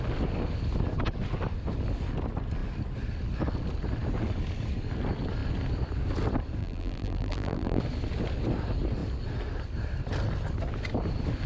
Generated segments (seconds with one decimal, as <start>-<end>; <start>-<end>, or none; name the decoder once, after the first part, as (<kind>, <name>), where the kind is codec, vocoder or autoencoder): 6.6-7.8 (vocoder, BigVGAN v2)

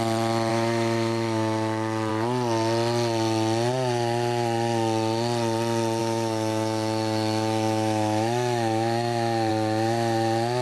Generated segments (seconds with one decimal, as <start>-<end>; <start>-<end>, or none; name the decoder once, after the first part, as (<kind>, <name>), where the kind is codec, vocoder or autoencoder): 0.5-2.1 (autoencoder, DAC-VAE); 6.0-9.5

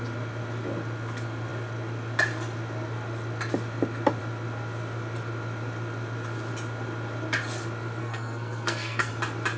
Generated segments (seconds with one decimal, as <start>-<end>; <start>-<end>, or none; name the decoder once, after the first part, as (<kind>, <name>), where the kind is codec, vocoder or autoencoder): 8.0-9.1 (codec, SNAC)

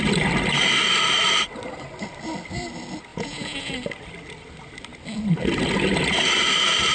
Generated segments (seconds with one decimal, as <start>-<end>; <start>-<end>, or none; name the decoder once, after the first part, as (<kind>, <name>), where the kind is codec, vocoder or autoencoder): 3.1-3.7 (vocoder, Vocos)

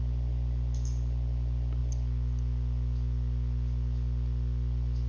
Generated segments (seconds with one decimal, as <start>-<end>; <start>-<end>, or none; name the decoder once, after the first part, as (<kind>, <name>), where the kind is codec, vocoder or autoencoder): none